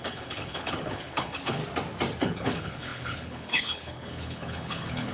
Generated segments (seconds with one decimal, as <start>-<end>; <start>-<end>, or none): 0.0-1.6; 2.2-5.1